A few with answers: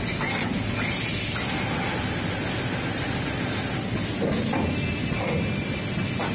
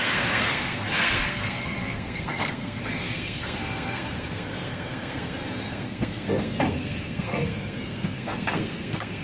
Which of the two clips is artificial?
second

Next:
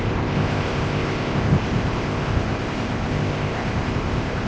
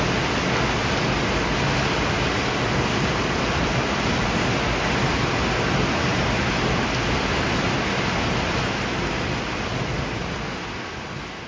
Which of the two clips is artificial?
first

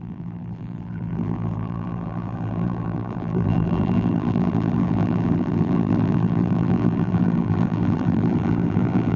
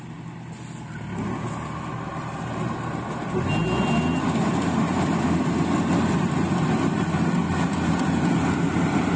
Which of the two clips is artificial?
first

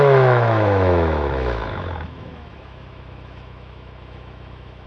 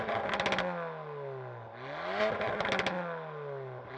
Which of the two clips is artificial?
first